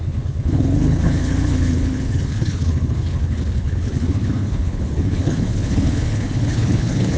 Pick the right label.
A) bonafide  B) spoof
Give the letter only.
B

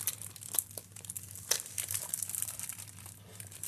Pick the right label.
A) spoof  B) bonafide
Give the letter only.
A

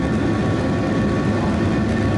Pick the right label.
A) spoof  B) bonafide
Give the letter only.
B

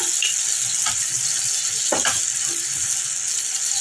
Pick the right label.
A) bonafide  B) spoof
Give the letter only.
A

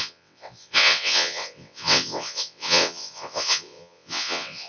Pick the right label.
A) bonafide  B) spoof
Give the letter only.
B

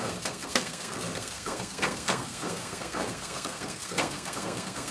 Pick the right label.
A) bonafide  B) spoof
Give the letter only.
B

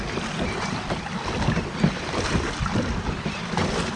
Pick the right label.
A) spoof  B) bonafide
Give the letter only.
B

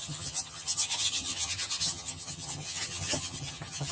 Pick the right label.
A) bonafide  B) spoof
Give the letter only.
B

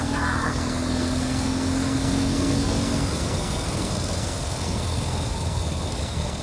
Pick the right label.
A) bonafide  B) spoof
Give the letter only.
B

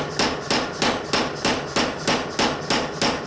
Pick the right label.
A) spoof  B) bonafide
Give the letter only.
B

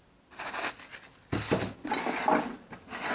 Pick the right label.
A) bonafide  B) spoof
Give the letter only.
A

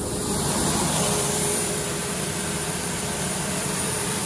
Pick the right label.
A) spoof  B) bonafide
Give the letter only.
A